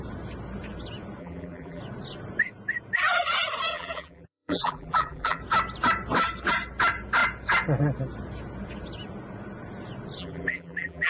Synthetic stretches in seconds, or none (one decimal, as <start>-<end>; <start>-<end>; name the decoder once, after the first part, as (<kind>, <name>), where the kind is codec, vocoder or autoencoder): 1.2-1.8 (vocoder, BigVGAN v2); 3.7-5.4; 10.2-11.1